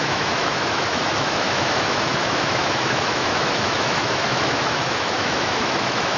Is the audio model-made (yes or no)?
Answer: yes